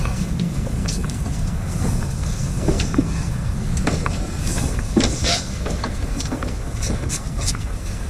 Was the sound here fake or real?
fake